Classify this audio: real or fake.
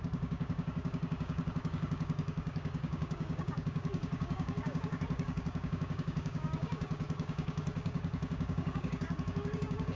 fake